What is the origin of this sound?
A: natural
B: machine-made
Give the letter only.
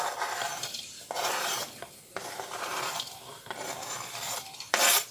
B